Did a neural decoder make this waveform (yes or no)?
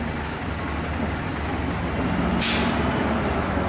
no